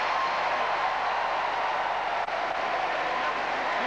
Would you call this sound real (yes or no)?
yes